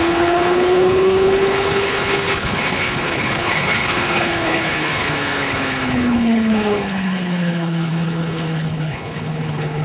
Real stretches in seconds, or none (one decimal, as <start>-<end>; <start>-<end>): none